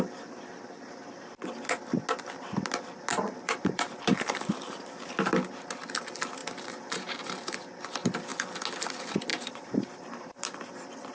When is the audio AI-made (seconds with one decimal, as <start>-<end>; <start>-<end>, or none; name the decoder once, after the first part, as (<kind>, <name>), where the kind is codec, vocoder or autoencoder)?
3.1-4.5 (vocoder, BigVGAN v2); 6.4-7.6; 9.3-10.7